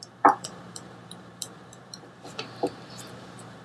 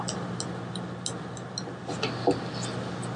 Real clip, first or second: second